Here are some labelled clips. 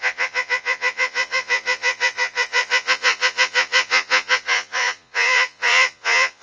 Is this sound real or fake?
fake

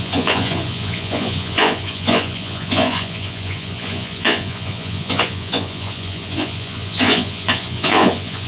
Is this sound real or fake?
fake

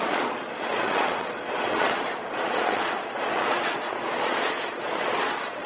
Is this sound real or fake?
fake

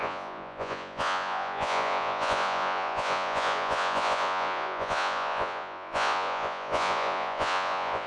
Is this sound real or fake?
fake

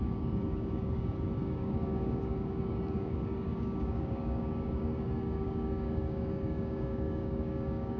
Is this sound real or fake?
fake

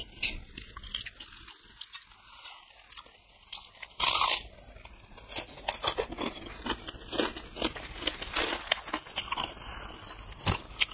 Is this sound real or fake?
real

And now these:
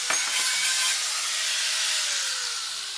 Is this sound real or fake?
real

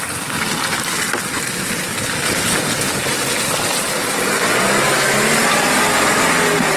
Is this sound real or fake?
real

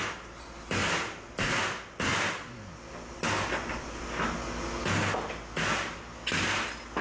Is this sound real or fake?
real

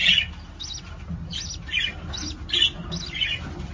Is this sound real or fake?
real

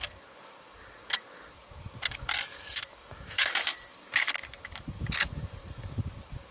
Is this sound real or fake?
fake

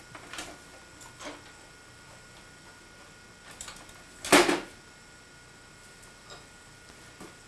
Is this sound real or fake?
real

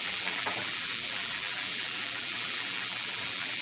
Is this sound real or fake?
fake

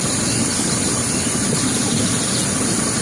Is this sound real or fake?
real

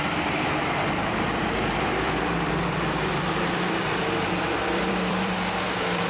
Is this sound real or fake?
fake